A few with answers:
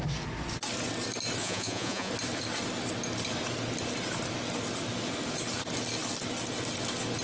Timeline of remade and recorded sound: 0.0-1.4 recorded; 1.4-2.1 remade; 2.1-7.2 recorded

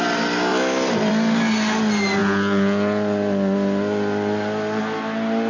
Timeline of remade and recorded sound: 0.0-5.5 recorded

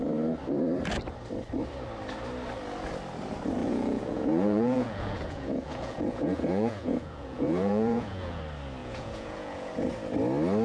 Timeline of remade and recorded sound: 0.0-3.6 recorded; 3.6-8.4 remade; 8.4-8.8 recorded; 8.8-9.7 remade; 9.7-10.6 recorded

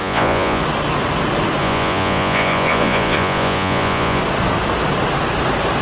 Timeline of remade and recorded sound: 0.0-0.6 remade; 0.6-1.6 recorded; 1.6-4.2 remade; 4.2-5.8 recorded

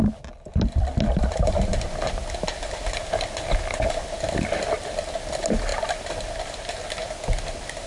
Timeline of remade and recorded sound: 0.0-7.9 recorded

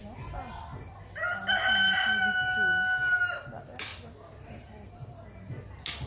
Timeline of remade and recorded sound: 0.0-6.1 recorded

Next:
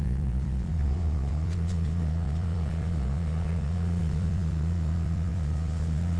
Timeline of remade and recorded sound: 0.0-6.2 remade

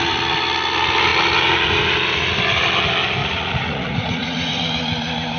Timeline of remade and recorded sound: 0.0-3.2 recorded; 3.2-4.6 remade; 4.6-5.4 recorded